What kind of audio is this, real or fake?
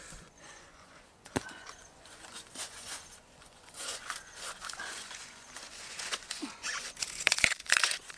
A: fake